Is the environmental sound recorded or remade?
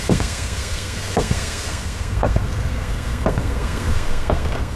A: remade